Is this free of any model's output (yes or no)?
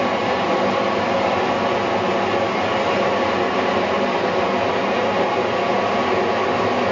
yes